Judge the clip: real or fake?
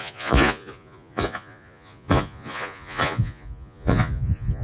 fake